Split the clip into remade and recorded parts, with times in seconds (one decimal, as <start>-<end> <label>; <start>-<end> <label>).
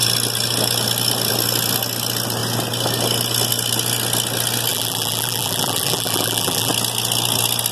0.0-4.7 recorded; 4.7-6.7 remade; 6.7-7.7 recorded